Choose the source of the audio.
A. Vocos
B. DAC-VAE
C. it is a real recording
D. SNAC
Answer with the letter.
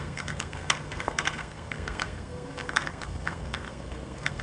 D